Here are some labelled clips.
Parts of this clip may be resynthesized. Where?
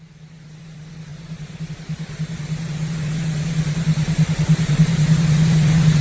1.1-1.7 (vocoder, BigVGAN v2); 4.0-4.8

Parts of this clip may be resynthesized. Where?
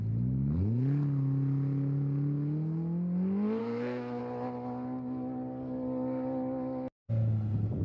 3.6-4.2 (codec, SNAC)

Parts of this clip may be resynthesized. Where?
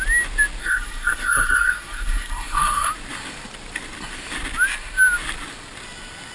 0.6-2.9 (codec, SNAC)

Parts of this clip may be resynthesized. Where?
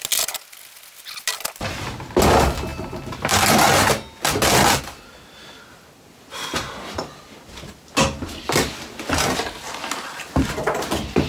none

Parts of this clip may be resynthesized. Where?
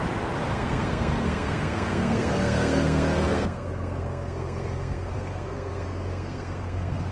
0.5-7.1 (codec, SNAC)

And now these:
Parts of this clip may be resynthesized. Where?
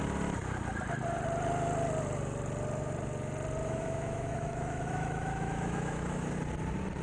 3.6-6.3 (autoencoder, DAC-VAE)